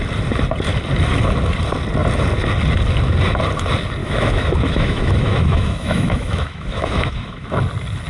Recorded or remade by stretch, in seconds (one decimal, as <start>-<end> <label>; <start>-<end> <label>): 0.0-4.0 recorded; 4.0-7.6 remade; 7.6-8.1 recorded